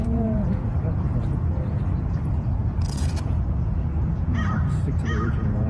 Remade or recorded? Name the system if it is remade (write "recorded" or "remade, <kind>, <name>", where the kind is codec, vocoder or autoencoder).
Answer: remade, vocoder, Vocos